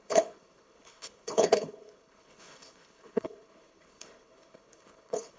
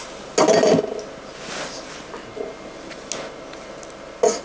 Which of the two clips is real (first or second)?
second